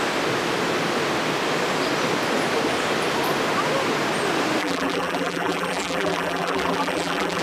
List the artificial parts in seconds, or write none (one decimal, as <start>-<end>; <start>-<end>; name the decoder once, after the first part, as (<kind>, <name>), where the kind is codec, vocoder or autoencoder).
4.6-7.4 (vocoder, BigVGAN v2)